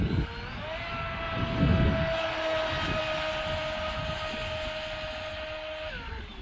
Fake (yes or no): no